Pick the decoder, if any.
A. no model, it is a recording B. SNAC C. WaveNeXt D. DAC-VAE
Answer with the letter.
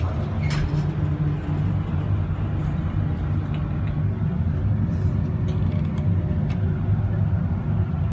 A